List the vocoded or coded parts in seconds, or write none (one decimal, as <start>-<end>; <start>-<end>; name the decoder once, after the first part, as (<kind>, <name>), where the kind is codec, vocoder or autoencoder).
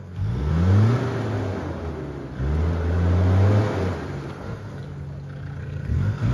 0.0-0.5 (codec, SNAC); 4.3-4.8; 5.6-6.3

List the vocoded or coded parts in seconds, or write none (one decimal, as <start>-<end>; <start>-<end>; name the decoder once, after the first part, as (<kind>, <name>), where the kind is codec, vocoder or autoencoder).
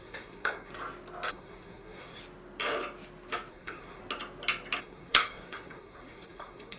0.0-0.7 (codec, SNAC); 1.3-2.2; 3.5-4.0; 4.8-6.8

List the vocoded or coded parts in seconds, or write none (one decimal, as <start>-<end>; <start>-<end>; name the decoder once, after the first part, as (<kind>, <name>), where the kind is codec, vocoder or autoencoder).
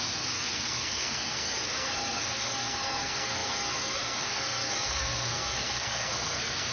0.0-6.7 (codec, SNAC)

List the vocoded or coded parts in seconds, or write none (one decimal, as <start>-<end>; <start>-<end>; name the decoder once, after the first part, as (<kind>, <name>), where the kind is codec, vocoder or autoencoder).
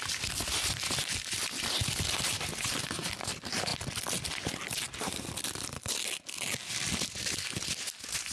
none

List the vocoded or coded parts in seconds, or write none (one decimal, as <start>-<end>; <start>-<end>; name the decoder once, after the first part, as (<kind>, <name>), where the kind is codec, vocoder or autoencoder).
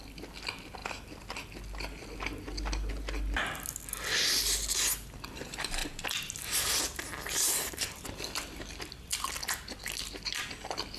none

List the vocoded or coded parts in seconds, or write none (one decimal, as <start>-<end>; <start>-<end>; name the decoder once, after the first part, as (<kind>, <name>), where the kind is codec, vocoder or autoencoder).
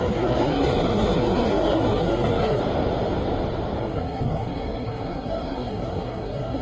0.0-2.6 (codec, SNAC); 3.8-6.6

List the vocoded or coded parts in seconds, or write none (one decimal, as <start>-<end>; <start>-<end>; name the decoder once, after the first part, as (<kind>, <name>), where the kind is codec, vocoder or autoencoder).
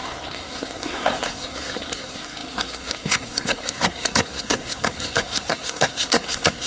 0.0-6.7 (codec, SNAC)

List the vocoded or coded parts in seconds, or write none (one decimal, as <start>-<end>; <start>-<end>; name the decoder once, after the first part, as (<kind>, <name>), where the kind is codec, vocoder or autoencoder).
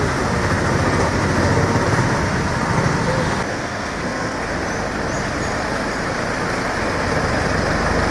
3.5-4.4 (codec, SNAC)